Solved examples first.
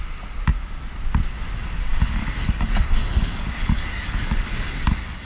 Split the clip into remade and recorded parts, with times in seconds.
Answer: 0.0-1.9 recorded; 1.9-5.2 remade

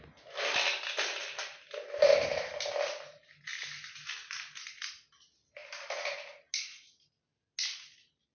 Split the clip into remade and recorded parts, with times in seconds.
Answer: 0.0-8.3 recorded